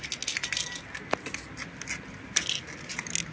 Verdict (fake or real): real